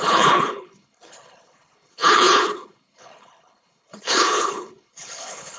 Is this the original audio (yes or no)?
no